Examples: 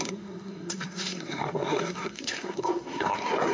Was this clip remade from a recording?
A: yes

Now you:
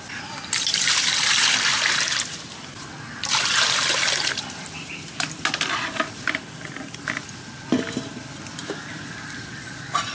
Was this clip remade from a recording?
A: yes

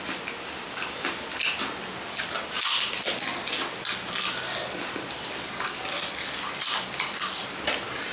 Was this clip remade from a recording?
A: no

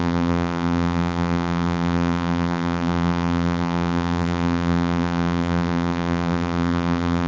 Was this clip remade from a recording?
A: yes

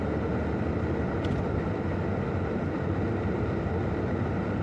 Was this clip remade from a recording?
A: no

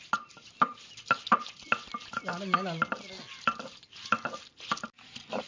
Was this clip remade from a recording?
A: no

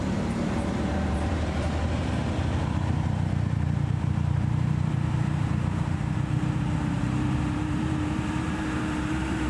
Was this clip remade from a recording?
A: yes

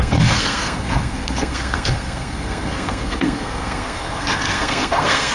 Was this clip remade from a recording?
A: yes